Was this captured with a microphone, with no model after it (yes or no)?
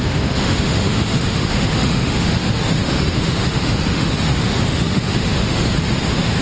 no